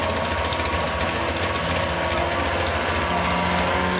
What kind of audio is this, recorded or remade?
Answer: recorded